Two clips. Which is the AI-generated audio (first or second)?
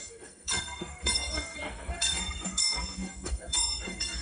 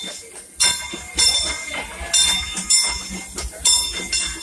first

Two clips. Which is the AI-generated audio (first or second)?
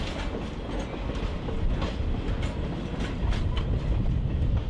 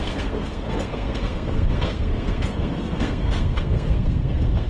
second